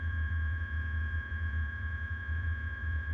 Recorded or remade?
remade